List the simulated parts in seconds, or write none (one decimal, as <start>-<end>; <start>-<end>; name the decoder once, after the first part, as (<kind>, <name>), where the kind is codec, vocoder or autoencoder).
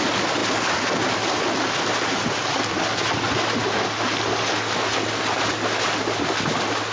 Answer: none